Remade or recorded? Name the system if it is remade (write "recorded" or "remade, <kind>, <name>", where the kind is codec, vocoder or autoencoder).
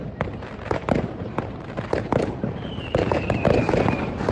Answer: remade, vocoder, BigVGAN v2